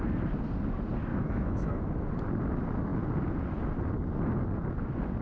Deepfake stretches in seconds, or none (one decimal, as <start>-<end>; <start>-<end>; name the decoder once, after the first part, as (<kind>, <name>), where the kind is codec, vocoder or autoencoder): 1.1-1.9 (autoencoder, DAC-VAE)

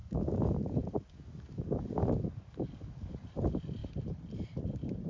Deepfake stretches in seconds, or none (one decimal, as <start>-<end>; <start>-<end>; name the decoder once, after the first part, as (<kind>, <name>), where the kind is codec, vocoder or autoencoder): 0.0-3.1 (codec, DAC)

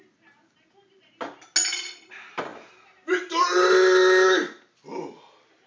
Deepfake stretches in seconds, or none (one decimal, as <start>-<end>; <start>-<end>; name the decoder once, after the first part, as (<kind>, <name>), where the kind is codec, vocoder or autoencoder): none

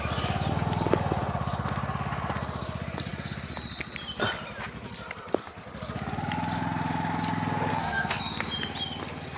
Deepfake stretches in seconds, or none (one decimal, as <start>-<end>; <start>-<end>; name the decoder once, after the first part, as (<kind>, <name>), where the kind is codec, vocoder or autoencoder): 7.7-8.2 (codec, SNAC)

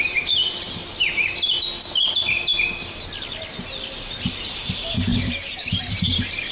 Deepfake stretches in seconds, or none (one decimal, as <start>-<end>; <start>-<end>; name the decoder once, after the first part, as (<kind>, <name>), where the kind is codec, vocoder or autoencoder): 0.0-0.8 (vocoder, BigVGAN v2); 4.2-6.5

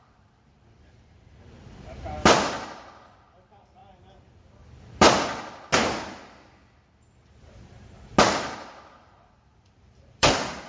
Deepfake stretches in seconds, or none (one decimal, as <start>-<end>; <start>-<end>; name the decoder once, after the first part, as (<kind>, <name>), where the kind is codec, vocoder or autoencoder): 0.0-3.8 (vocoder, BigVGAN v2); 8.2-10.7

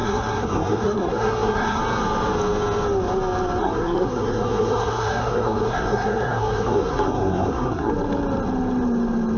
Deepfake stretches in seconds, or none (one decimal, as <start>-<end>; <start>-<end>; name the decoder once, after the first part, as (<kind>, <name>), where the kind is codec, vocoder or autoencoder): 0.0-1.8 (codec, SNAC); 3.6-7.9

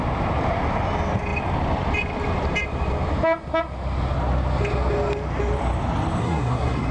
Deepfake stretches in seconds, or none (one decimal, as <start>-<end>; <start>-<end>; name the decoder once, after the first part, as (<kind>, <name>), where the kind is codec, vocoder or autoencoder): 6.2-6.9 (codec, SNAC)